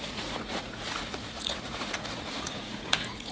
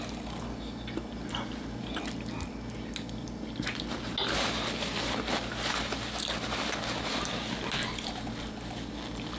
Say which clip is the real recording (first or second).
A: second